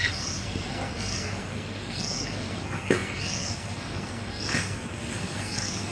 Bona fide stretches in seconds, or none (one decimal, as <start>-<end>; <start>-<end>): none